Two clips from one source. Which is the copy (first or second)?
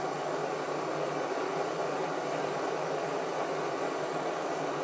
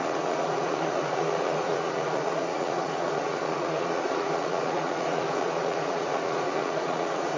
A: second